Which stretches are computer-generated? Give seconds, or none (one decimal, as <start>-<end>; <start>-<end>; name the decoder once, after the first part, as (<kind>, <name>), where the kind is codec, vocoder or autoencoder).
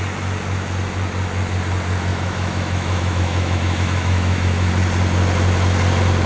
2.1-4.7 (autoencoder, DAC-VAE)